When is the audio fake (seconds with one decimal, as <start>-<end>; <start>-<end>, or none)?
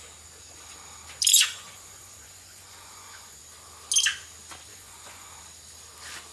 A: 1.3-3.4; 4.7-5.3